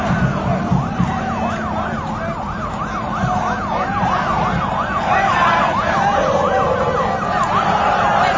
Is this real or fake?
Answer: real